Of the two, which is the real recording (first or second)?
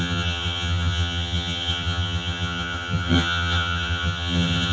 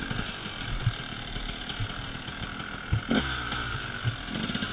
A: second